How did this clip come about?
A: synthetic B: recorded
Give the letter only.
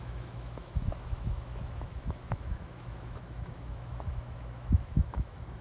A